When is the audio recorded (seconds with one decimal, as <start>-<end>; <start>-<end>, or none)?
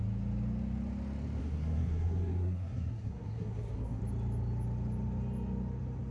0.0-1.4; 4.0-6.1